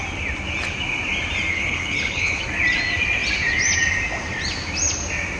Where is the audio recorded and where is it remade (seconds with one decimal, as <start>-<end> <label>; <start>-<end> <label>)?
0.0-1.5 recorded; 1.5-2.4 remade; 2.4-5.4 recorded